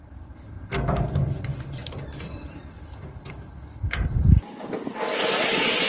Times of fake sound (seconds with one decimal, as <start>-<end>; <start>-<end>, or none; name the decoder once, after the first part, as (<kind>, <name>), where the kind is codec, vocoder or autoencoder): none